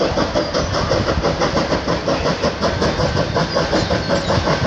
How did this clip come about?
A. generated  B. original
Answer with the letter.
B